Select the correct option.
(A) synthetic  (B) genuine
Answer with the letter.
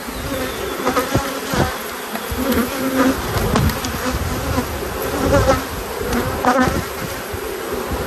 B